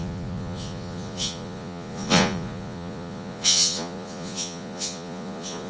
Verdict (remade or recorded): remade